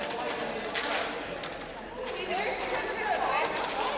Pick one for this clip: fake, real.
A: real